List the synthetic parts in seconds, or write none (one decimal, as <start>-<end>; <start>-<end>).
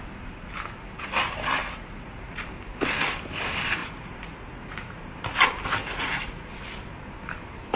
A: 1.6-2.4; 3.8-5.0; 5.8-6.5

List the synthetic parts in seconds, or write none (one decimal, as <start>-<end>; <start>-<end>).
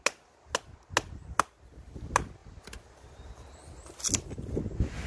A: none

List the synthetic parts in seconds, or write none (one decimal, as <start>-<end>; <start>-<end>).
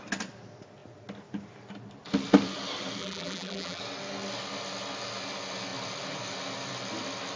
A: 3.0-3.8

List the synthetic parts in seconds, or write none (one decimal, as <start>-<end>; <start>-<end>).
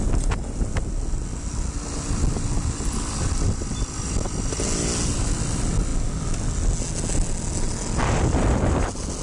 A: none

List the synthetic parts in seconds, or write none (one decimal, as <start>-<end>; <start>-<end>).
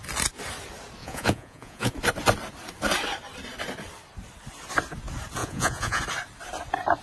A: 1.0-1.9; 5.4-6.0